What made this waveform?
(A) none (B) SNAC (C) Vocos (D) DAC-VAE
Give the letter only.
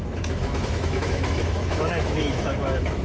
D